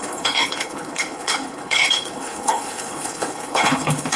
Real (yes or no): no